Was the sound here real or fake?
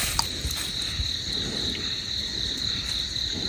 real